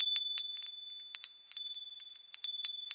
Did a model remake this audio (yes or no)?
no